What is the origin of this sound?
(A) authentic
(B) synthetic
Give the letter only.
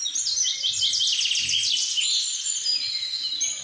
A